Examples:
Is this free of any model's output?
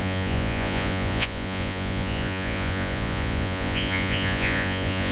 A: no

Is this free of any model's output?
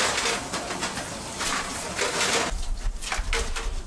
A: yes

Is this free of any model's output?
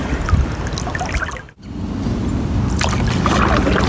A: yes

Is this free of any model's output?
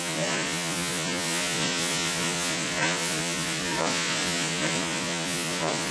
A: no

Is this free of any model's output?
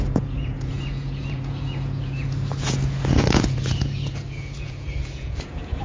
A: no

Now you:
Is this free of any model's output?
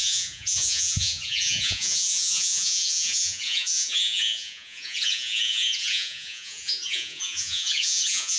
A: no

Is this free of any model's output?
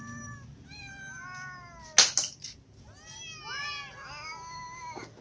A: yes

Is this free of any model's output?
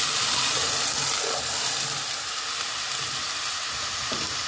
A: yes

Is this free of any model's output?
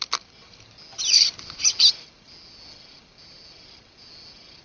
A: yes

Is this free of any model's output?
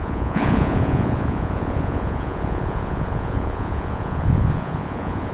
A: no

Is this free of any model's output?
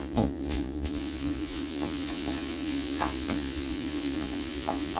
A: no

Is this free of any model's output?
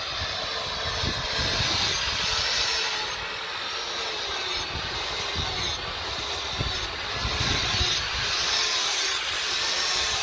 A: yes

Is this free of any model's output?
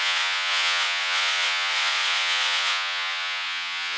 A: no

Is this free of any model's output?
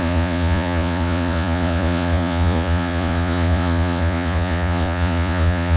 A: no